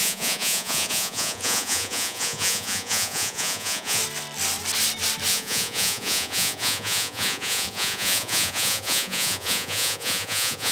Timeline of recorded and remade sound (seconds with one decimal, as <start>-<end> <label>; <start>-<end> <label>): 0.0-4.0 remade; 4.0-5.3 recorded; 5.3-10.7 remade